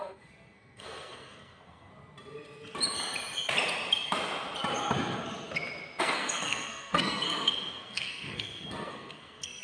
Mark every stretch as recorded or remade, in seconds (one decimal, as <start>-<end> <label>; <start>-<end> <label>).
0.0-1.9 remade; 1.9-6.0 recorded; 6.0-9.6 remade